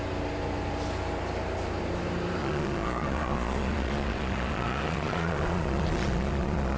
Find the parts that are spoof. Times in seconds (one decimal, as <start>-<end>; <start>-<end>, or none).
2.4-6.8